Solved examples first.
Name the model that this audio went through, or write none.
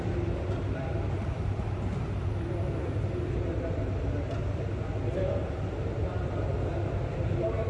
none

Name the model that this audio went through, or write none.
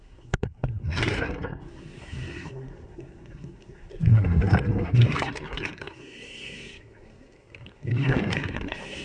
codec, SNAC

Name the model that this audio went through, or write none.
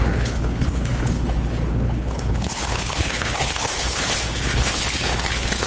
codec, HILCodec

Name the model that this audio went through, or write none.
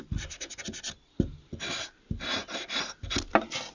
none